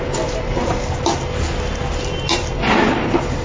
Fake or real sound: real